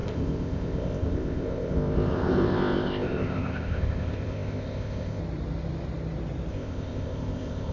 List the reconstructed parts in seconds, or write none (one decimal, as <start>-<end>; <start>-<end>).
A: 0.0-5.2; 6.5-7.7